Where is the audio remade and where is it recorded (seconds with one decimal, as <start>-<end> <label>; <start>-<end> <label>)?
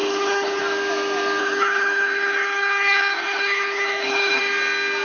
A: 0.0-0.6 remade; 0.6-1.4 recorded; 1.4-4.4 remade; 4.4-5.0 recorded